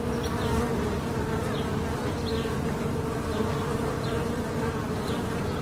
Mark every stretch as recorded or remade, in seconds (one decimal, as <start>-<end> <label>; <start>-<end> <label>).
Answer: 0.0-5.6 recorded